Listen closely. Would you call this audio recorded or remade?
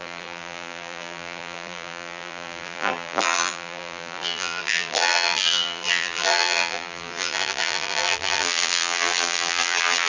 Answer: remade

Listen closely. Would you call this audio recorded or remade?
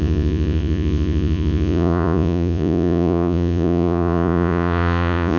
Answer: remade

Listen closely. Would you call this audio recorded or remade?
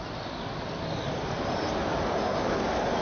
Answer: recorded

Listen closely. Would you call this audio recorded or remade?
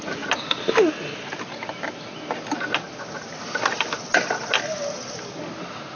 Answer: recorded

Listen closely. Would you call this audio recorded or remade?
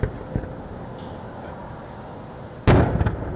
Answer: recorded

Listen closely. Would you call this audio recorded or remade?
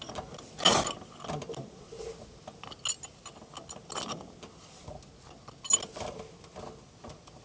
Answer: recorded